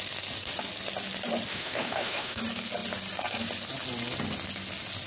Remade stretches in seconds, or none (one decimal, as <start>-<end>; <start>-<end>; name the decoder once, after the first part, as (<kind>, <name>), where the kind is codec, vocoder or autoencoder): 1.5-2.4 (autoencoder, DAC-VAE)